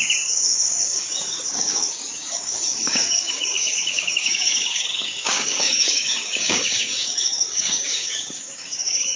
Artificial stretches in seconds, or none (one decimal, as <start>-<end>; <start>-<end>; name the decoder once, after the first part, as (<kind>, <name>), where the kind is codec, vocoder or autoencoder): 0.0-9.2 (codec, DAC)